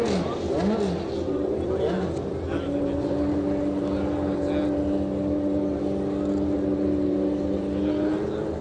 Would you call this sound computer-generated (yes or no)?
no